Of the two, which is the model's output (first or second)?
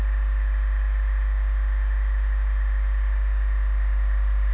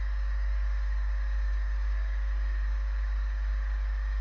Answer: second